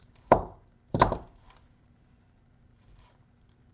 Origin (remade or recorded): remade